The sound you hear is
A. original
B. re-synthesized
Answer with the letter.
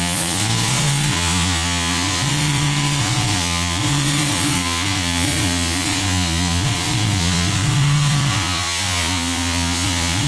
B